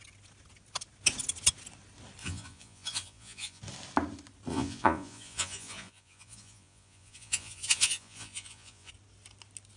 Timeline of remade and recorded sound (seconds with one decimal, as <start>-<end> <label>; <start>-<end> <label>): 0.0-2.2 recorded; 2.2-3.6 remade; 3.6-4.5 recorded; 4.5-8.9 remade; 8.9-9.8 recorded